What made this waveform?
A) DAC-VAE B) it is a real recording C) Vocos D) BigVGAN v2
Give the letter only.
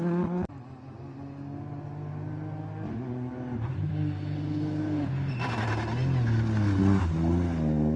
B